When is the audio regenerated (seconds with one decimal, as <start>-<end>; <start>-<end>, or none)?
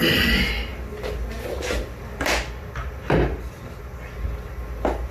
none